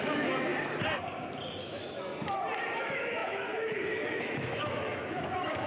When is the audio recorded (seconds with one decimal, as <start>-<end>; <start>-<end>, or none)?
0.5-1.6; 2.1-2.8